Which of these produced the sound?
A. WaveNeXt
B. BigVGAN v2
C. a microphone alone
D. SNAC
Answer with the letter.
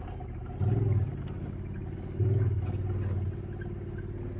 C